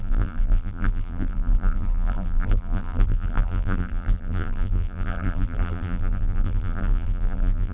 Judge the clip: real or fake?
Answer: fake